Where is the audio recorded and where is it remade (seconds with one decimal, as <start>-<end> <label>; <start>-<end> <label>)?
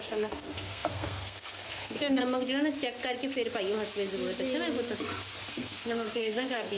0.0-2.2 remade; 2.2-5.5 recorded; 5.5-6.8 remade